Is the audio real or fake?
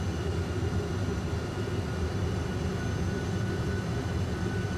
real